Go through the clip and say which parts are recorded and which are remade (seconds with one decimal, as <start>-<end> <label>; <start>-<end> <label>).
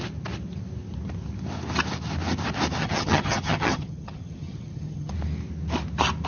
0.0-2.8 recorded; 2.8-5.1 remade; 5.1-6.3 recorded